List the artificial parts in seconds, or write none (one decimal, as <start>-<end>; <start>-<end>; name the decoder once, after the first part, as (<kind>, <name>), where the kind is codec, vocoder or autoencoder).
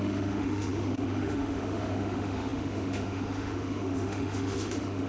0.0-5.1 (autoencoder, DAC-VAE)